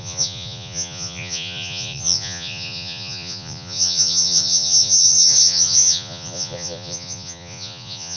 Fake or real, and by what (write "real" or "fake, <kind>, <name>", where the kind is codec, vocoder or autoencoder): fake, vocoder, Vocos